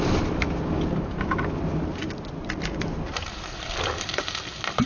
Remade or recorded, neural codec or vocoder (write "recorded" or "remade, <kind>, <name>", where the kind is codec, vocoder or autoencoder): recorded